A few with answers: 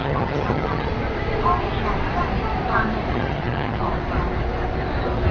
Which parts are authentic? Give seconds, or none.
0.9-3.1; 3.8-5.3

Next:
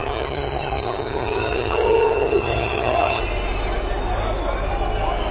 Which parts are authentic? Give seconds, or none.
3.2-5.3

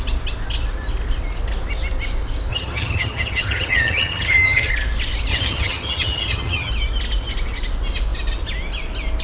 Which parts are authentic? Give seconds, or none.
0.0-2.5; 4.7-5.3; 6.7-9.2